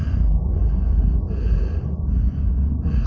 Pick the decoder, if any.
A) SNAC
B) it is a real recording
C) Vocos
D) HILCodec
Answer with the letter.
C